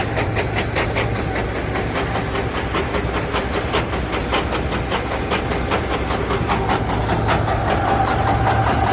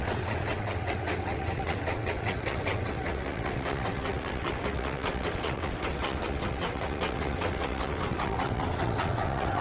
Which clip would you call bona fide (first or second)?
first